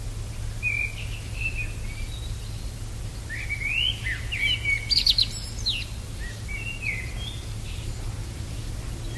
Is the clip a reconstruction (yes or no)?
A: no